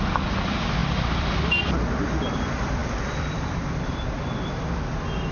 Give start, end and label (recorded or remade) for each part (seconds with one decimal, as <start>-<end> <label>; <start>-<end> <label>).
0.0-5.3 recorded